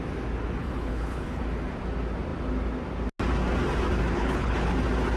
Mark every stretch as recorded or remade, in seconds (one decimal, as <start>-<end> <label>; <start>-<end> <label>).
0.0-0.6 recorded; 0.6-1.4 remade; 1.4-4.1 recorded; 4.1-4.7 remade; 4.7-5.2 recorded